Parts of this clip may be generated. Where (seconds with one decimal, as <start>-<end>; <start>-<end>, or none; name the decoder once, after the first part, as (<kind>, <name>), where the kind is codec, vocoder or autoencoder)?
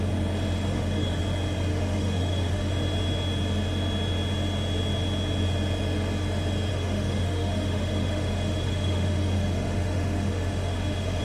0.7-1.2 (autoencoder, DAC-VAE); 1.7-2.7; 6.7-11.2